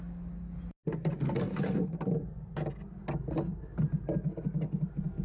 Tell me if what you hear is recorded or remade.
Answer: recorded